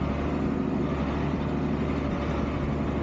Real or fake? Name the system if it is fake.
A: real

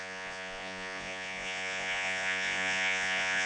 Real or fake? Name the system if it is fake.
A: fake, vocoder, Vocos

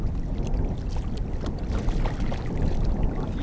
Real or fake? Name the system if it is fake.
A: real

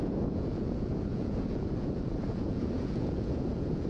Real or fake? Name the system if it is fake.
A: fake, vocoder, Vocos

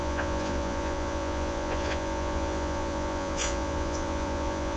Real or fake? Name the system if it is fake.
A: fake, vocoder, Vocos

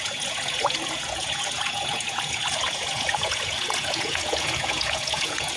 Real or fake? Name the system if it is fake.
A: fake, vocoder, Vocos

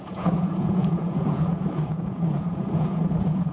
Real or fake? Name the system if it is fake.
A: fake, vocoder, Vocos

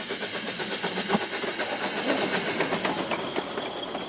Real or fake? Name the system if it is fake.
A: real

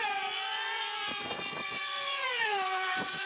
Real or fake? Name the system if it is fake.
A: fake, vocoder, Vocos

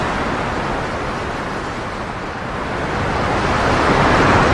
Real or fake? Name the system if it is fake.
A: real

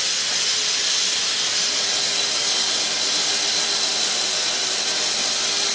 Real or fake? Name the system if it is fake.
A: real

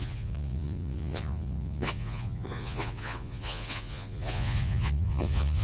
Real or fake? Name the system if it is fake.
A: fake, vocoder, Vocos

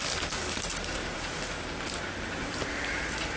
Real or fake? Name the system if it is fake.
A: real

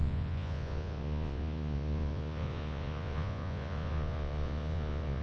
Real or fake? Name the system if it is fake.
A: fake, vocoder, Vocos